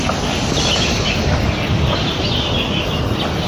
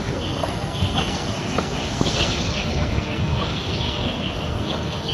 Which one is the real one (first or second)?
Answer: first